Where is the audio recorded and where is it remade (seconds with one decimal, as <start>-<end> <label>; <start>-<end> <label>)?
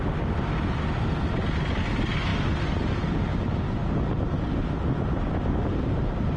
0.0-6.4 recorded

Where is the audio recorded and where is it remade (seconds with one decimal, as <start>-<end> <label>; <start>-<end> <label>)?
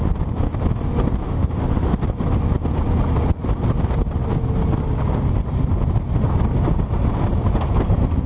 0.0-1.2 recorded; 1.2-2.0 remade; 2.0-8.3 recorded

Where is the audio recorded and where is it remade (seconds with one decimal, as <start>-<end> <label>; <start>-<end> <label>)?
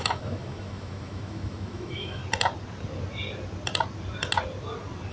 0.0-2.2 remade; 2.2-5.1 recorded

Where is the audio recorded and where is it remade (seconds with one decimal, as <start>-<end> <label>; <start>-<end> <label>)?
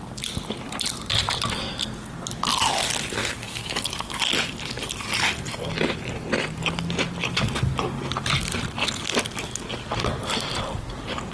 0.0-3.2 recorded; 3.2-4.2 remade; 4.2-11.3 recorded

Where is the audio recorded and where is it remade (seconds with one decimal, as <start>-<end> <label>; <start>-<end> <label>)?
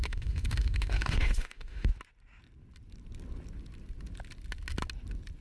0.0-1.9 remade; 1.9-5.4 recorded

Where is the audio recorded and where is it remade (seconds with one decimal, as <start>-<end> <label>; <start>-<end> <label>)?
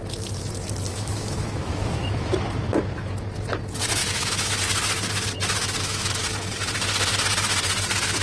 0.0-0.9 recorded; 0.9-2.3 remade; 2.3-4.0 recorded; 4.0-4.6 remade; 4.6-5.6 recorded; 5.6-6.2 remade; 6.2-8.2 recorded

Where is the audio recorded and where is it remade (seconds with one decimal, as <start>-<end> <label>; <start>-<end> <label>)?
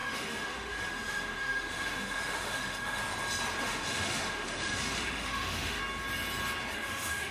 0.0-3.0 remade; 3.0-3.6 recorded; 3.6-5.8 remade; 5.8-6.7 recorded; 6.7-7.3 remade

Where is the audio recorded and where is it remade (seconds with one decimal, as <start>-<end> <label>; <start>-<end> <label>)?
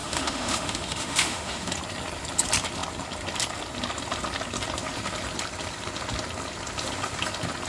0.0-1.7 remade; 1.7-7.7 recorded